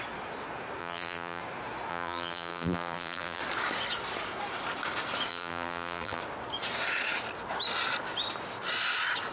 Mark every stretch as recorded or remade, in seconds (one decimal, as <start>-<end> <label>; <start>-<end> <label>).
0.0-0.8 recorded; 0.8-1.4 remade; 1.4-1.9 recorded; 1.9-3.4 remade; 3.4-5.3 recorded; 5.3-6.2 remade; 6.2-9.3 recorded